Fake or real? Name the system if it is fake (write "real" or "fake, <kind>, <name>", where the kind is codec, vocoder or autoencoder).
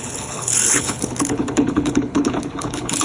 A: fake, codec, HILCodec